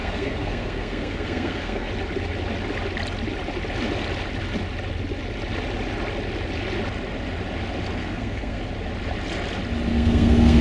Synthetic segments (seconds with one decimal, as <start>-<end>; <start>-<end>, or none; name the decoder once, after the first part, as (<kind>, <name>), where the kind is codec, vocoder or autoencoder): 0.0-1.9 (codec, SNAC); 8.0-8.6; 9.9-10.6